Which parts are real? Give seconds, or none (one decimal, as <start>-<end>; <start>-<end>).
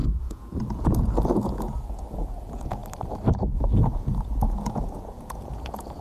2.8-3.3